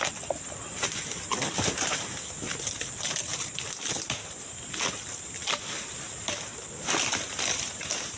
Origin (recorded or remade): recorded